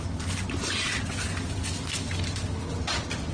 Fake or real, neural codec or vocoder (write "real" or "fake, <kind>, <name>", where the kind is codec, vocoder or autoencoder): real